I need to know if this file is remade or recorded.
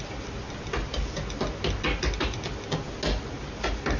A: recorded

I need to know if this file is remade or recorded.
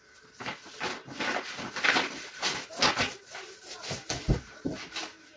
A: recorded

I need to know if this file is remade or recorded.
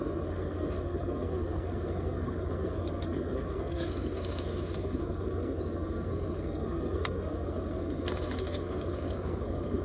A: remade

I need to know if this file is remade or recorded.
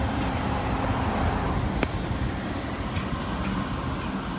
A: recorded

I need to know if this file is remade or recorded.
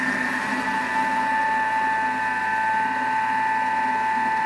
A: recorded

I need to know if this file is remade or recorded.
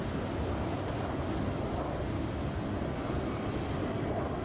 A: recorded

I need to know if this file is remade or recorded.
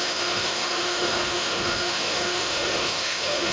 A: remade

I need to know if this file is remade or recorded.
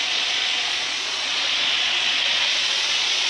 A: remade